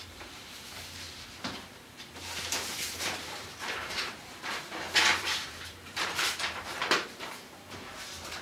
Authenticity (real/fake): fake